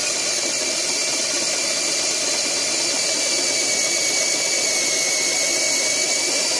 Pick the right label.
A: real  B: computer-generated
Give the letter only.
A